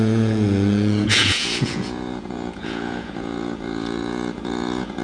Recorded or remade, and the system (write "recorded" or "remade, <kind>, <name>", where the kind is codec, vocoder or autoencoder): remade, vocoder, Vocos